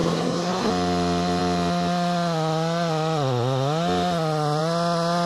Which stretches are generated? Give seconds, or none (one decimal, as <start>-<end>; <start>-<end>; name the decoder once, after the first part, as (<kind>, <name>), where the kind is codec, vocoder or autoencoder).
0.0-0.7 (codec, SNAC)